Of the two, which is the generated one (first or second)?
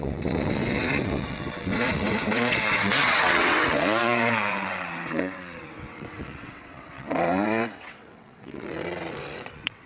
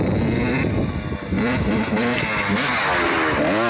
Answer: first